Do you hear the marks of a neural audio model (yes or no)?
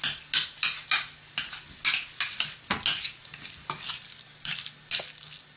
no